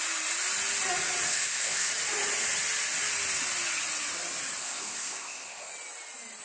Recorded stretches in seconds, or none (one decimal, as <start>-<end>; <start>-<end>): 0.0-1.3; 1.9-4.6; 5.7-6.4